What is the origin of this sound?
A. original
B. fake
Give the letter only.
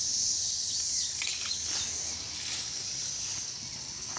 A